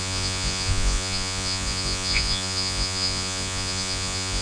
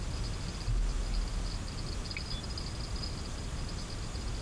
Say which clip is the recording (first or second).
second